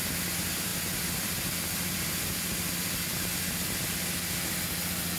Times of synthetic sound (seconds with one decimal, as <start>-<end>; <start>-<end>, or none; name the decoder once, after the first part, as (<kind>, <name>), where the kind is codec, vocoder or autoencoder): 0.7-2.2 (vocoder, BigVGAN v2)